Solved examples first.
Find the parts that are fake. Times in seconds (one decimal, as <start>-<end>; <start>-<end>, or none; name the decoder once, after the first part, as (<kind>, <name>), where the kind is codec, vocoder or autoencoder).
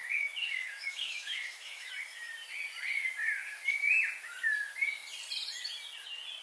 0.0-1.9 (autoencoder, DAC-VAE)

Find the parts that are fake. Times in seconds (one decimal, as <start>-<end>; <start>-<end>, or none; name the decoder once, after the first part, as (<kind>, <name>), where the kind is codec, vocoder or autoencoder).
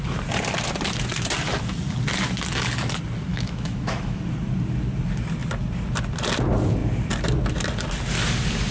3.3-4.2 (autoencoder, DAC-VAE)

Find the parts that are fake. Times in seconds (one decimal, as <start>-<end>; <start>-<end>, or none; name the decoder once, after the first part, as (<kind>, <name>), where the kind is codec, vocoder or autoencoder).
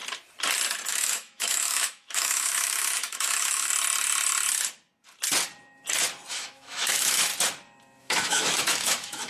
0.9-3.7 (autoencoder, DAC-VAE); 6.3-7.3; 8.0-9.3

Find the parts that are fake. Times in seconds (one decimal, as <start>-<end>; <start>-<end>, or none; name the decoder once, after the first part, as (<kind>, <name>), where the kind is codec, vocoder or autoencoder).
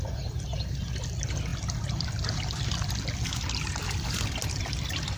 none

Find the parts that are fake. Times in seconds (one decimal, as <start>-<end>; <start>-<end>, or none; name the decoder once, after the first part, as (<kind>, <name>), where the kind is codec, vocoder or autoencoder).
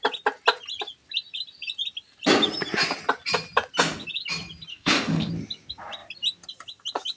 4.7-5.3 (autoencoder, DAC-VAE)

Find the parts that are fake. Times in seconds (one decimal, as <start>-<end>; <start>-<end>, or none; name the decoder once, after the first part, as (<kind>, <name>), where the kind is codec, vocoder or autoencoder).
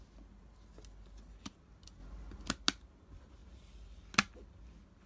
none